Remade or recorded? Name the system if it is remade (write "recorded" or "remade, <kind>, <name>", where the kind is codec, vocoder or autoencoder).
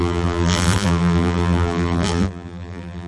remade, vocoder, BigVGAN v2